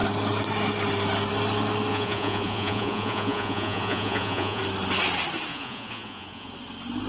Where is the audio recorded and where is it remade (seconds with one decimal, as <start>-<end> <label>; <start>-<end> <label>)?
0.0-1.9 recorded; 1.9-4.6 remade; 4.6-5.5 recorded; 5.5-6.5 remade; 6.5-7.1 recorded